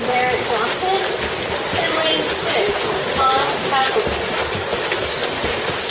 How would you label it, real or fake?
fake